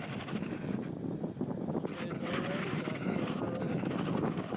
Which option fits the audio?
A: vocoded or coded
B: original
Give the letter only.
B